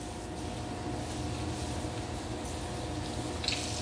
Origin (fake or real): real